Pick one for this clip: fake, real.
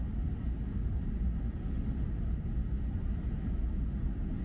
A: real